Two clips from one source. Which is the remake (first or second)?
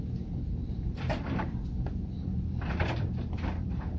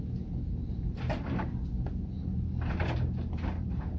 first